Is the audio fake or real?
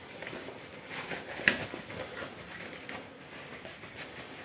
real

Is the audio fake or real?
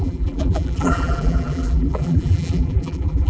fake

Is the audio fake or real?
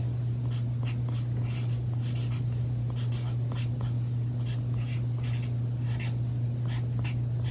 real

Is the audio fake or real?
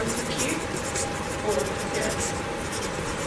real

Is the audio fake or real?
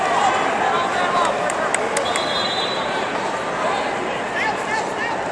fake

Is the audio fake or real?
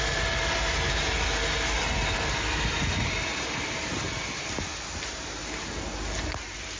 real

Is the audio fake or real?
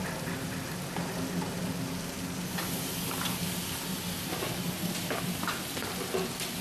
real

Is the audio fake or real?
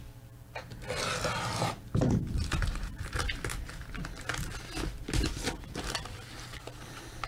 real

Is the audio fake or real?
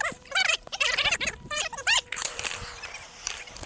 fake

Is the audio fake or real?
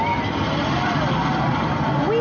real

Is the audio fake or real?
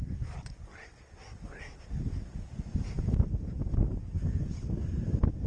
real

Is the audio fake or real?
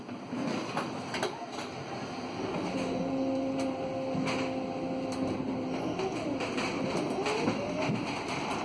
real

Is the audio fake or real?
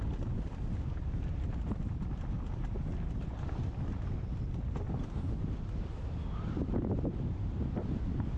real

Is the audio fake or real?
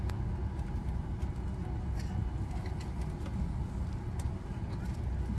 real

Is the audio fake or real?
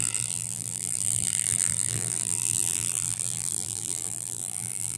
fake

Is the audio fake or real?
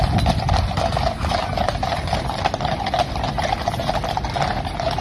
real